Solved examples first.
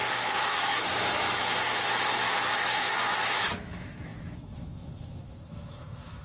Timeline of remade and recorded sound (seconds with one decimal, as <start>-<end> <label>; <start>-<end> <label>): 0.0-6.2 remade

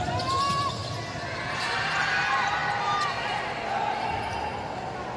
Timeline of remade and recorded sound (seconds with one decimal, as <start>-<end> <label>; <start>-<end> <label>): 0.0-5.2 recorded

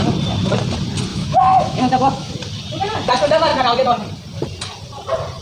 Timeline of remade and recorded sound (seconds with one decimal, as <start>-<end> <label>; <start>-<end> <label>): 0.0-1.1 recorded; 1.1-2.3 remade; 2.3-5.4 recorded

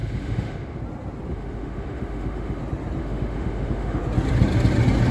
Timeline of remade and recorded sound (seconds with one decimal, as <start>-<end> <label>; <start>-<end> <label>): 0.0-0.8 remade; 0.8-1.3 recorded; 1.3-2.6 remade; 2.6-3.0 recorded; 3.0-4.0 remade; 4.0-5.1 recorded

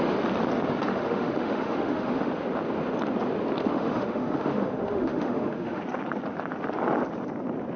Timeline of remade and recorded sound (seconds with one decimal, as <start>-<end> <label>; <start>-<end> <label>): 0.0-0.9 recorded; 0.9-2.3 remade; 2.3-3.6 recorded; 3.6-5.8 remade; 5.8-7.8 recorded

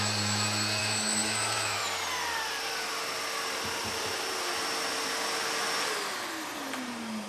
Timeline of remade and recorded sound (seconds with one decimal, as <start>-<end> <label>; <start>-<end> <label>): 0.0-0.8 recorded; 0.8-1.8 remade; 1.8-7.3 recorded

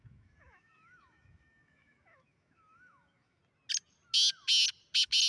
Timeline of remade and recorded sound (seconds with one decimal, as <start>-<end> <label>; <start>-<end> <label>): 0.0-3.4 remade; 3.4-5.3 recorded

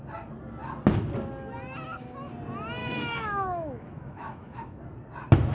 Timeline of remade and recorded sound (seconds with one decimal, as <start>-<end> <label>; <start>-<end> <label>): 0.0-2.8 recorded; 2.8-4.8 remade; 4.8-5.5 recorded